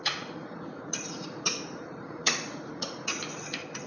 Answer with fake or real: fake